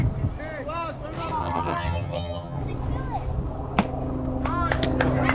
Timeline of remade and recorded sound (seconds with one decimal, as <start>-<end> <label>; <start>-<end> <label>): 0.0-1.4 recorded; 1.4-2.6 remade; 2.6-5.3 recorded